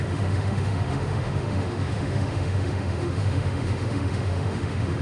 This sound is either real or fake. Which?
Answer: fake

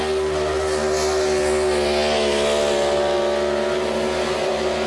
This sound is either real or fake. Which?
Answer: real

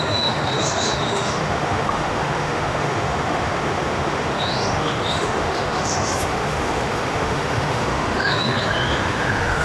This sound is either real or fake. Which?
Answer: fake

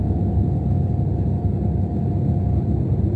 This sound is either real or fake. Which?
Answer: real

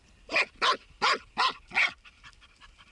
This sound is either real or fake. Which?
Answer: real